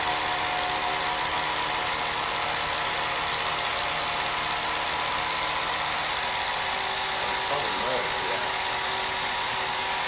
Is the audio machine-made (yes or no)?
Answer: no